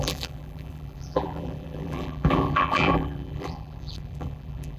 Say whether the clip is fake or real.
fake